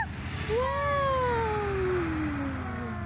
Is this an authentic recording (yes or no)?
yes